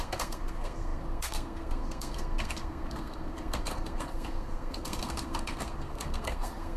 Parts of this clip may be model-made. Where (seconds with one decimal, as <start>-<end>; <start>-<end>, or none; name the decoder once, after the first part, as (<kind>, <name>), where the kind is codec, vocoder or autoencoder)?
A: 0.0-6.8 (codec, SNAC)